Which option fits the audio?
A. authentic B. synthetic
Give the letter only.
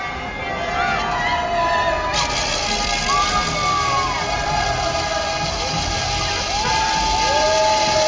A